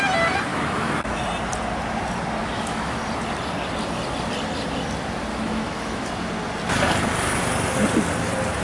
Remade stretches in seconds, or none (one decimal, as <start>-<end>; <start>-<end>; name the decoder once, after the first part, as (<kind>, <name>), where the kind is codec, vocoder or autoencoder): 0.5-1.2 (autoencoder, DAC-VAE); 2.4-3.0; 5.3-6.1